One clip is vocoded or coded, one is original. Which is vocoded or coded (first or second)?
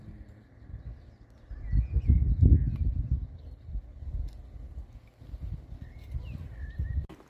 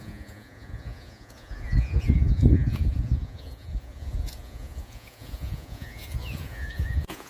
second